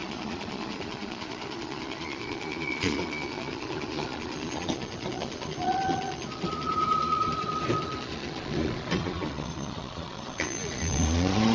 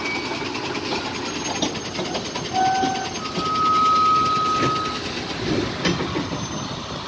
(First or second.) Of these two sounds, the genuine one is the second